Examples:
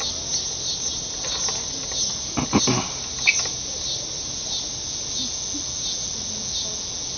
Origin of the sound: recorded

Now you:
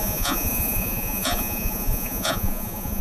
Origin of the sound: remade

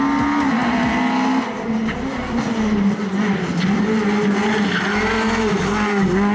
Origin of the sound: recorded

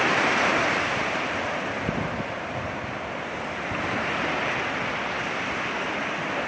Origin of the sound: recorded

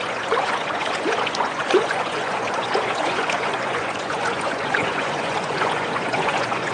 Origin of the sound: remade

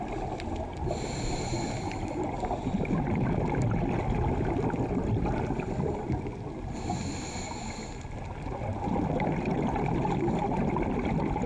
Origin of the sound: recorded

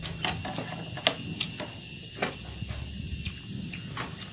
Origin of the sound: recorded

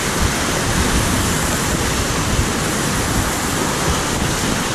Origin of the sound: recorded